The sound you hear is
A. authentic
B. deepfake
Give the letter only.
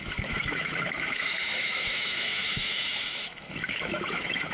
B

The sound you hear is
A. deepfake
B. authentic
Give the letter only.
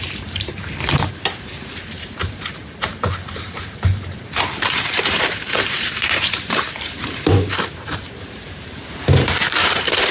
A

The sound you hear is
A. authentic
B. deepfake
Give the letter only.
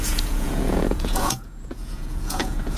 B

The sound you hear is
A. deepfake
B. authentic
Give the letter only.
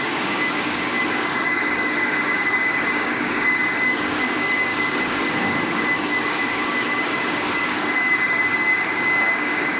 A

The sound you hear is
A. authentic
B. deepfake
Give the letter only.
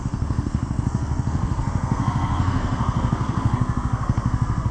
B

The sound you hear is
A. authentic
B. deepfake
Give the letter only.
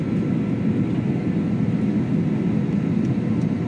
A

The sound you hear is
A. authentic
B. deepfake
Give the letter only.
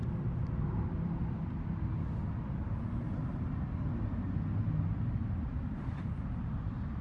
A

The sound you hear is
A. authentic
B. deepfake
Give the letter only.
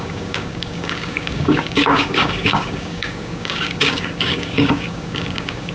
B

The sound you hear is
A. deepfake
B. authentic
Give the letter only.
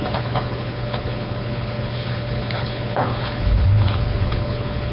A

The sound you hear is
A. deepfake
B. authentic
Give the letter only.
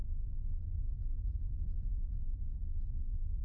B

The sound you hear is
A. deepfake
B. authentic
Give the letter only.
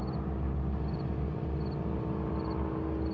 B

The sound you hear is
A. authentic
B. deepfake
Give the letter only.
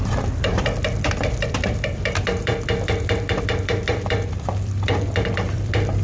B